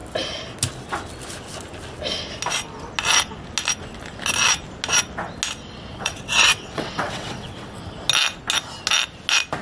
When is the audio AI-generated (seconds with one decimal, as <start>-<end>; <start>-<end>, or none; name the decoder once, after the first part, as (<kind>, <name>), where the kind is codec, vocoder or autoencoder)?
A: 5.9-7.8 (vocoder, WaveNeXt)